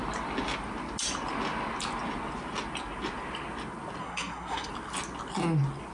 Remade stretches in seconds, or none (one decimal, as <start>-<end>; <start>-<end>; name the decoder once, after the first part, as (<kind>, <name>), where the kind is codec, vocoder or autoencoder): 4.0-4.7 (codec, SNAC)